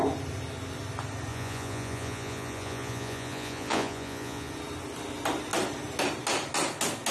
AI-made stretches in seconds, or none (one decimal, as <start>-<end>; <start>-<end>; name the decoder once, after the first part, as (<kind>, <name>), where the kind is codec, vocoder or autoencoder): 1.3-4.5 (vocoder, Vocos)

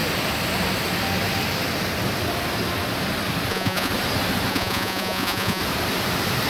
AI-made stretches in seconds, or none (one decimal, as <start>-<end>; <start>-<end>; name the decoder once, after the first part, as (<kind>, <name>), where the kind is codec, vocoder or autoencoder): 3.5-3.9 (vocoder, Vocos); 4.5-5.6

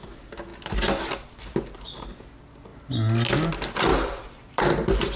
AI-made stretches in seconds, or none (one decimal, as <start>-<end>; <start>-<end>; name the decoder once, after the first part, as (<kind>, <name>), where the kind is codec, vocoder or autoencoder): none

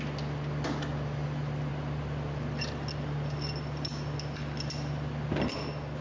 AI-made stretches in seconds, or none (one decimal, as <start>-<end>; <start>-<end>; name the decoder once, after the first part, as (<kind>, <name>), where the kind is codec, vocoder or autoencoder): none

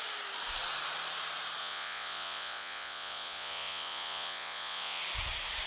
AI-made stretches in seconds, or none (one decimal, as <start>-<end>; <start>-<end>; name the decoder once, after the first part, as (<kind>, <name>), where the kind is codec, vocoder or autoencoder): 1.6-5.0 (vocoder, Vocos)

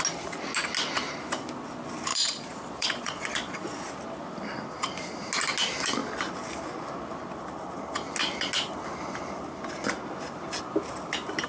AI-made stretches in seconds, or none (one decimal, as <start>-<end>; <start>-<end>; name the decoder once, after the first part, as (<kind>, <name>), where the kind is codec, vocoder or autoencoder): 2.1-3.9 (vocoder, Vocos)

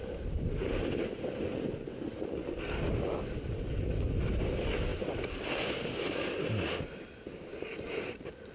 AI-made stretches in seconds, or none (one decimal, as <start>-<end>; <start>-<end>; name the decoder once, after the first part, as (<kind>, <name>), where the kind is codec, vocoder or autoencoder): none